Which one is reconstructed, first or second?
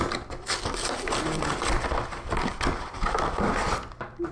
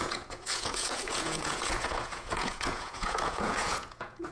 second